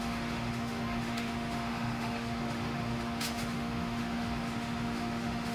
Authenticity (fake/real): fake